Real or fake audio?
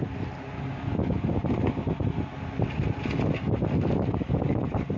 real